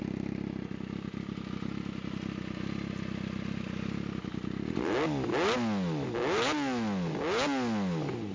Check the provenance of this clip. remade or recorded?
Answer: recorded